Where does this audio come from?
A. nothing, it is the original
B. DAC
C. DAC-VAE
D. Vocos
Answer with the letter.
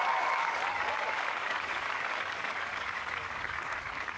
B